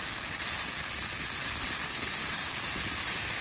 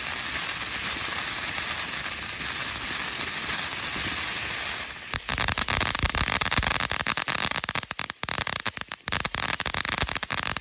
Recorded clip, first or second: second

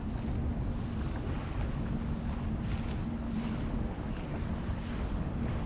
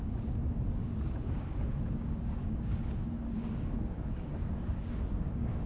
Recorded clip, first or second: first